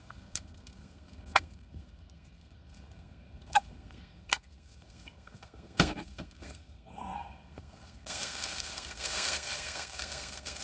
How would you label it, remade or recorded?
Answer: remade